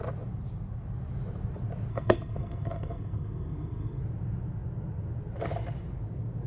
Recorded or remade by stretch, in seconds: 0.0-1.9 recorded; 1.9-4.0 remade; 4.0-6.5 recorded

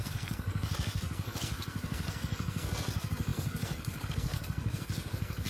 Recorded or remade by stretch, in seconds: 0.0-5.5 remade

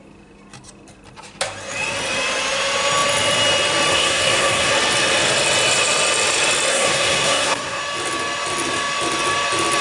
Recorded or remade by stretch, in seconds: 0.0-3.9 recorded; 3.9-4.7 remade; 4.7-6.7 recorded; 6.7-7.8 remade; 7.8-9.8 recorded

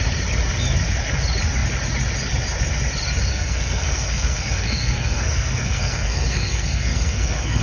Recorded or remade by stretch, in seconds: 0.0-3.3 recorded; 3.3-7.6 remade

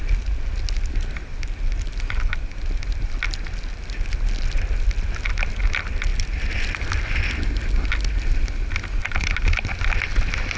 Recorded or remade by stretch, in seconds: 0.0-10.6 recorded

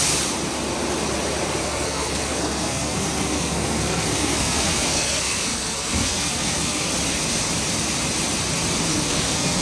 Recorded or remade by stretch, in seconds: 0.0-1.6 recorded; 1.6-6.9 remade; 6.9-8.9 recorded; 8.9-9.6 remade